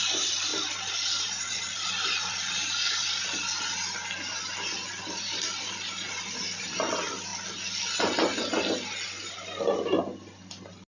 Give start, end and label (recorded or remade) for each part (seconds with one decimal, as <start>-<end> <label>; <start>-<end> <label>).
0.0-0.5 remade; 0.5-1.1 recorded; 1.1-7.3 remade; 7.3-9.1 recorded; 9.1-11.0 remade